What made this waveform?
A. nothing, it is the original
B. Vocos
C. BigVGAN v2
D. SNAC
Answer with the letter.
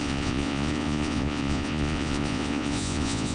B